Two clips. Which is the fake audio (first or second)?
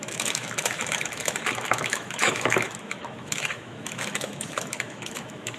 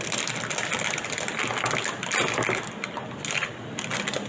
first